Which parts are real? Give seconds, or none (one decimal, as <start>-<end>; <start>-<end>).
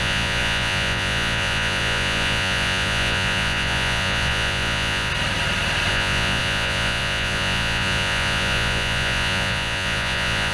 5.1-5.9